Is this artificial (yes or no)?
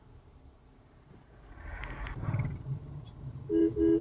yes